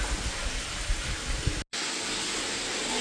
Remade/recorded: recorded